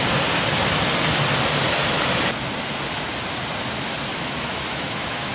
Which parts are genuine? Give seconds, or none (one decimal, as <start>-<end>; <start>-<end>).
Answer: 0.0-4.1